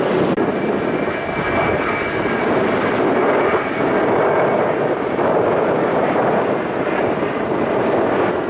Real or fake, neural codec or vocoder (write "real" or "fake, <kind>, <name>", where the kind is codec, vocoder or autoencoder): real